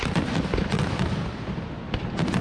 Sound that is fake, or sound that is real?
real